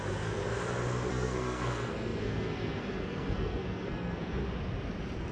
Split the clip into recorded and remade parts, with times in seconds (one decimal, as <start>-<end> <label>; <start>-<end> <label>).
0.0-0.4 remade; 0.4-1.1 recorded; 1.1-4.4 remade; 4.4-5.3 recorded